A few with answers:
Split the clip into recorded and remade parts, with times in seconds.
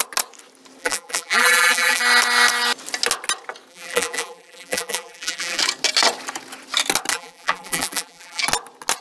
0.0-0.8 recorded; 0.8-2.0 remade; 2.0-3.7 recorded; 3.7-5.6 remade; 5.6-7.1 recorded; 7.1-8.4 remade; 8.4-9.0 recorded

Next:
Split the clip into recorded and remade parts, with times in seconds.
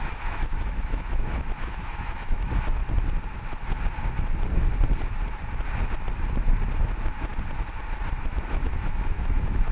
0.0-2.8 remade; 2.8-6.8 recorded; 6.8-7.3 remade; 7.3-8.3 recorded; 8.3-9.7 remade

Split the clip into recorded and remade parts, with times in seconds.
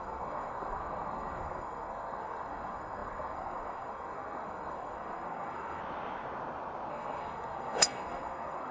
0.0-5.8 remade; 5.8-6.9 recorded; 6.9-8.7 remade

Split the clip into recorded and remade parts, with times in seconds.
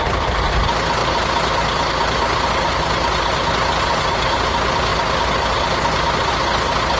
0.0-7.0 recorded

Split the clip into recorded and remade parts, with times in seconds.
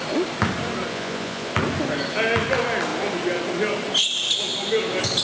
0.0-0.9 recorded; 0.9-1.5 remade; 1.5-5.2 recorded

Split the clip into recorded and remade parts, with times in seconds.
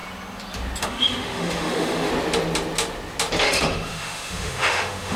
0.0-0.8 recorded; 0.8-2.1 remade; 2.1-3.4 recorded; 3.4-5.2 remade